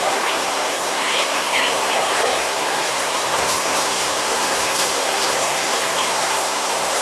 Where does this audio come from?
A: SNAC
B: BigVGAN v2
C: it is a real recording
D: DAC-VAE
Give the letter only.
A